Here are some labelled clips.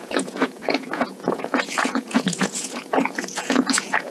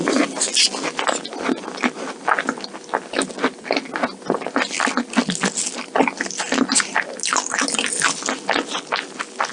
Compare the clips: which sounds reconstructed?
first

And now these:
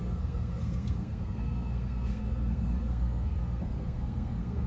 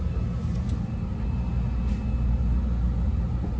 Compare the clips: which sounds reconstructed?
first